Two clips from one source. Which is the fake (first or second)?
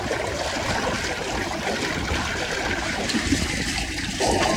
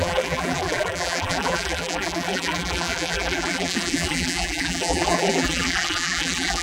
second